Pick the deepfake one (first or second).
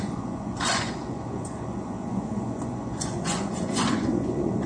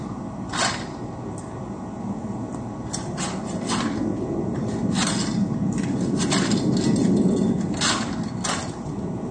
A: first